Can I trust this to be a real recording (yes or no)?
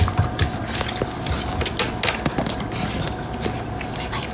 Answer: yes